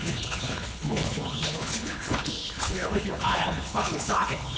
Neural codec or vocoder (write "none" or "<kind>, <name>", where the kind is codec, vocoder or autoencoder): codec, HILCodec